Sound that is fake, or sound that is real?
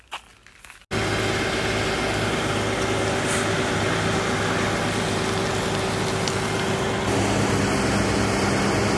real